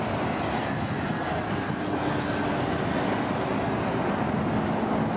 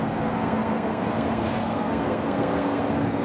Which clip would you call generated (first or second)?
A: second